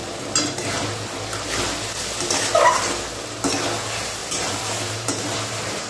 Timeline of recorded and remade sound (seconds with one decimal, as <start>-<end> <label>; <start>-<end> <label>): 0.0-4.2 recorded; 4.2-5.9 remade